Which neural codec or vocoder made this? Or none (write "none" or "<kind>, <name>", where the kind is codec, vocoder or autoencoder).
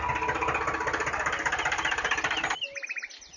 none